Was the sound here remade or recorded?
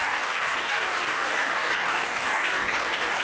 remade